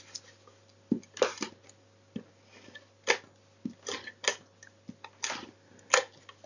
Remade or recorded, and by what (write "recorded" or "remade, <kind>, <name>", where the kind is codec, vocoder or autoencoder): recorded